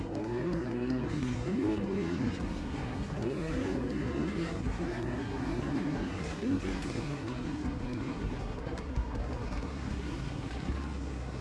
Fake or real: fake